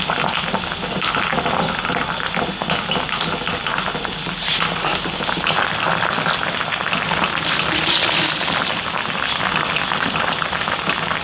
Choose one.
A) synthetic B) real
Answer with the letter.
B